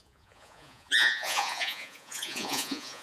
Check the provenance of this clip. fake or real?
fake